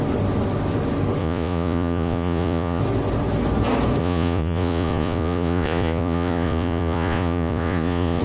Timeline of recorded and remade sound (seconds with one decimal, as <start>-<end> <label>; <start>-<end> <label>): 0.0-1.2 recorded; 1.2-2.8 remade; 2.8-4.0 recorded; 4.0-8.2 remade